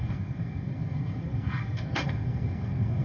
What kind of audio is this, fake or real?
fake